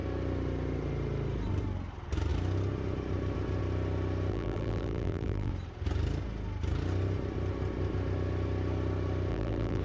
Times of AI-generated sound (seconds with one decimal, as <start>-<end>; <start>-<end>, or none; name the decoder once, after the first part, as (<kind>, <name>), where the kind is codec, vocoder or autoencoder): 4.3-5.5 (vocoder, BigVGAN v2); 9.3-9.8